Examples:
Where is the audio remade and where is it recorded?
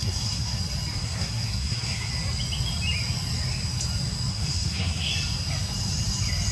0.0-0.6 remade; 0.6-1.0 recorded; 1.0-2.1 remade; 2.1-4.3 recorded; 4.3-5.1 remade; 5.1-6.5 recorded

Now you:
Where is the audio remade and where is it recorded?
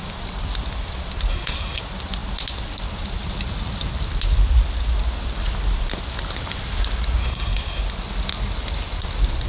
0.0-1.3 recorded; 1.3-1.8 remade; 1.8-7.2 recorded; 7.2-7.8 remade; 7.8-9.5 recorded